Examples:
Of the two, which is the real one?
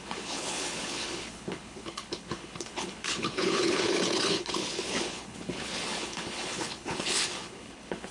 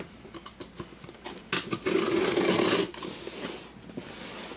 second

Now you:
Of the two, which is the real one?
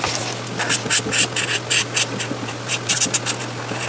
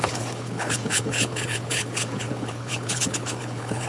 first